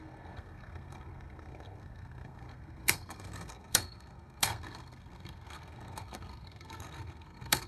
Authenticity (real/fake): fake